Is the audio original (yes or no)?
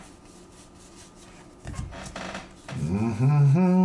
yes